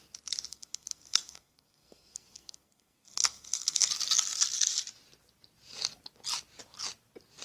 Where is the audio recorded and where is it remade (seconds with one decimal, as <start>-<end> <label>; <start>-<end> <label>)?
0.0-0.5 recorded; 0.5-3.9 remade; 3.9-7.4 recorded